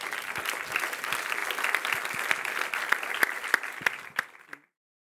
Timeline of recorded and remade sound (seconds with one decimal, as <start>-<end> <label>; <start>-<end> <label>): 0.0-5.0 recorded